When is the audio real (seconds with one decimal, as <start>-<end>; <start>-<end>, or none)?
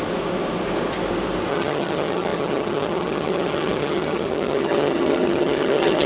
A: 0.0-1.5